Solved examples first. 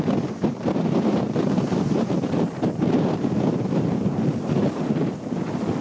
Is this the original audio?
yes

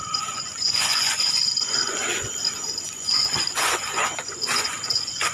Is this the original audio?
no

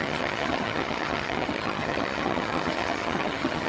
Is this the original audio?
no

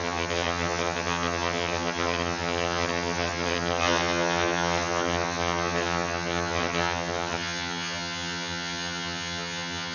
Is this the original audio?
no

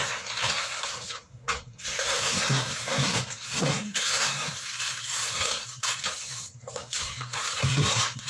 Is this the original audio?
no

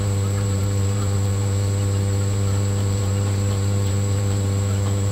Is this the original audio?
no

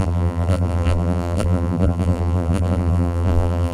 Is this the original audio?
no